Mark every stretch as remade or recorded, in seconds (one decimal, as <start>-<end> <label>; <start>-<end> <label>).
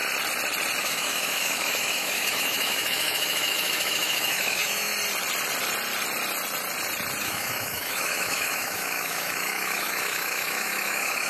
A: 0.0-0.8 recorded; 0.8-4.9 remade; 4.9-7.2 recorded; 7.2-11.3 remade